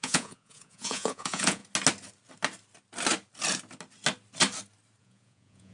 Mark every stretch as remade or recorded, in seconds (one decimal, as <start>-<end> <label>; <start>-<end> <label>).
0.0-1.6 remade; 1.6-5.0 recorded; 5.0-5.7 remade